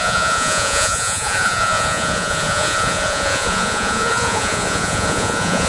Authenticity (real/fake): fake